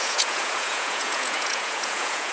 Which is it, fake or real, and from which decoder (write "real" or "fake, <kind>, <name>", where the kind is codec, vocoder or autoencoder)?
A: fake, vocoder, Vocos